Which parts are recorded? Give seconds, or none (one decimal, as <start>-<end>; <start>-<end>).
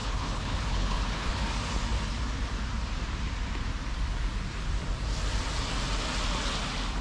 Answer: 1.5-7.0